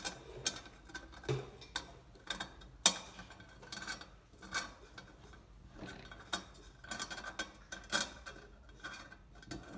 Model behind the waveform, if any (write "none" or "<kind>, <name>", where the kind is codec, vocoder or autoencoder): none